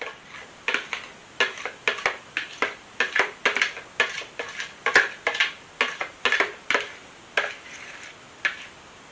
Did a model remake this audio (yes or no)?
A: no